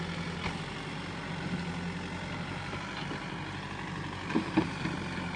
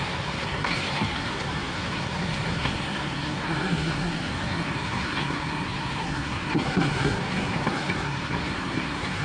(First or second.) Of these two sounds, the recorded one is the first